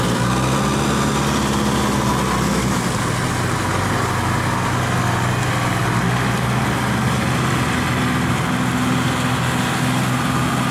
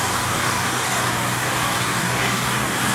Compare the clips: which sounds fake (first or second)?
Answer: second